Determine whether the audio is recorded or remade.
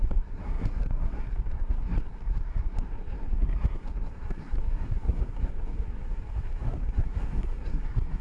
remade